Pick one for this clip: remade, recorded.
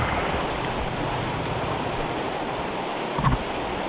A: recorded